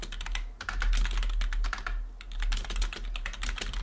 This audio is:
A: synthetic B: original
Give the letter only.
B